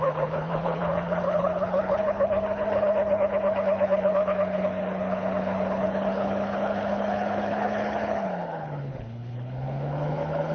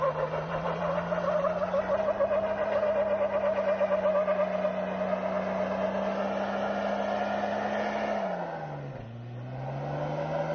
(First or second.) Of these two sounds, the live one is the second